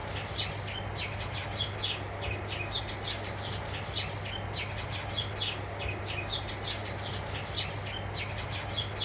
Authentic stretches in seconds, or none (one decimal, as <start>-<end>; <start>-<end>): 0.0-9.0